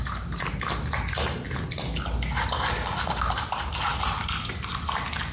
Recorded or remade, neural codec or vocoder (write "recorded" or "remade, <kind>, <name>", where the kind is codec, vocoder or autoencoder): recorded